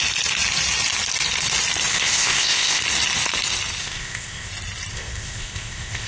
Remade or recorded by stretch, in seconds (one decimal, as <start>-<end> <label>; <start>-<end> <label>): 0.0-1.9 recorded; 1.9-2.8 remade; 2.8-3.8 recorded; 3.8-4.5 remade; 4.5-4.9 recorded; 4.9-6.1 remade